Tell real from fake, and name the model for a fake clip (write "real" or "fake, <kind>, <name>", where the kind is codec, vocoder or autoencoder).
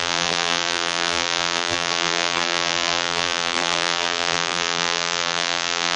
fake, vocoder, BigVGAN v2